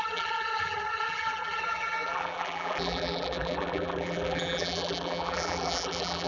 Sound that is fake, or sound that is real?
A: fake